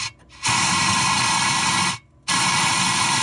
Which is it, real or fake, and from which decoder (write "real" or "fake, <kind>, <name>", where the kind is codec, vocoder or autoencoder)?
real